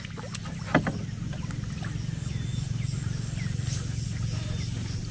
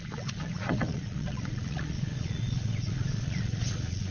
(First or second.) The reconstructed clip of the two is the second